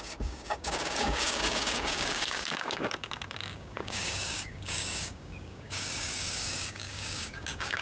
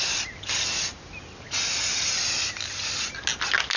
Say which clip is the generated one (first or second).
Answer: first